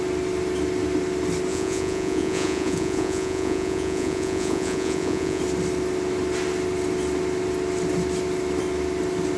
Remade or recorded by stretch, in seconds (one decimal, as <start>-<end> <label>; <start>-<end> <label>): 0.0-1.5 recorded; 1.5-5.4 remade; 5.4-9.4 recorded